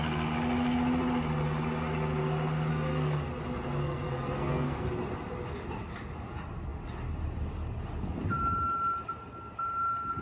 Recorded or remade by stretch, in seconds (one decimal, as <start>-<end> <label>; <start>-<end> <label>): 0.0-2.7 recorded; 2.7-3.3 remade; 3.3-3.8 recorded; 3.8-4.9 remade; 4.9-10.2 recorded